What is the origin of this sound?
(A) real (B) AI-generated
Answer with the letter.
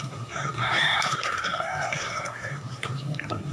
B